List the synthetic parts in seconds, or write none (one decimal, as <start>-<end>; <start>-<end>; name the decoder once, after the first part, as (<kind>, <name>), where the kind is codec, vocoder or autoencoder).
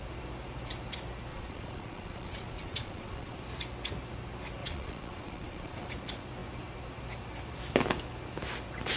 1.3-3.4 (vocoder, Vocos); 4.6-5.9